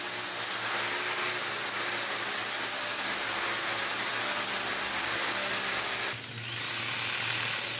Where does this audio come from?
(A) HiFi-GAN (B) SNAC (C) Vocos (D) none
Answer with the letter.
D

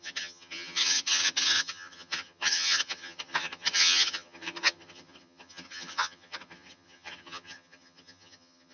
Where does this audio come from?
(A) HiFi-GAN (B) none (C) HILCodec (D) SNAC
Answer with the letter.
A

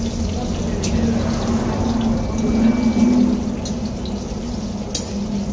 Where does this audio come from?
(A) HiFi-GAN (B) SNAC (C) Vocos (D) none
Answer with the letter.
D